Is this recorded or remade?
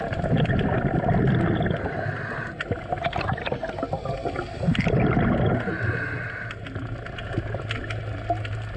recorded